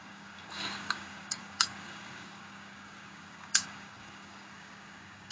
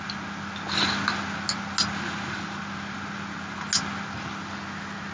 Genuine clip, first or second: second